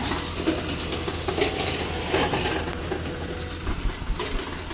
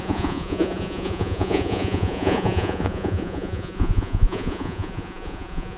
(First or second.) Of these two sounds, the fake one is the second